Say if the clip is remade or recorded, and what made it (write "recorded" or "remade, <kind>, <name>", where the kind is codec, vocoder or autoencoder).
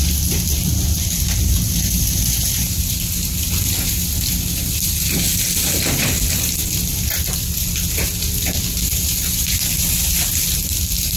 recorded